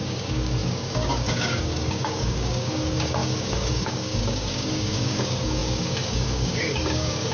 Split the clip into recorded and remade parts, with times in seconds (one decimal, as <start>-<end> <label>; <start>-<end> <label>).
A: 0.0-7.3 remade